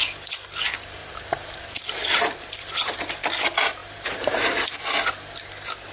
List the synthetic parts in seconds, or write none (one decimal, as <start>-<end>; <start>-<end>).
1.0-3.1; 3.8-5.1